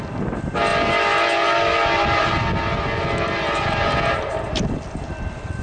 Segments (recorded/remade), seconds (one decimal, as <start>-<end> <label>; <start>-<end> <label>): 0.0-0.7 remade; 0.7-4.1 recorded; 4.1-5.6 remade